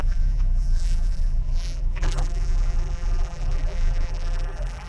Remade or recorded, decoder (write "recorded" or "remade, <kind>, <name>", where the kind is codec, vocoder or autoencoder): remade, vocoder, BigVGAN v2